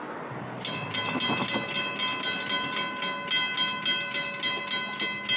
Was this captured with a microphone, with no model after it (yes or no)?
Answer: yes